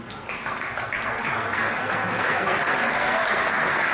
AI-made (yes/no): yes